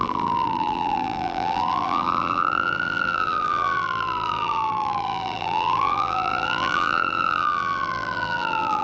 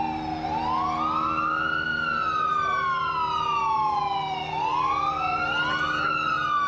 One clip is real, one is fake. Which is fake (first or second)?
first